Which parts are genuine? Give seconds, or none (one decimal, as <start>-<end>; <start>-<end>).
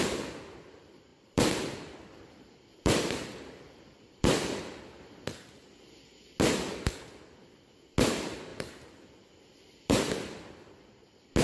0.0-1.1; 4.8-8.5; 10.5-11.4